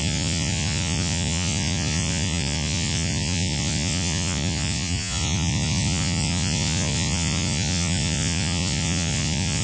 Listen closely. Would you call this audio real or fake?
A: fake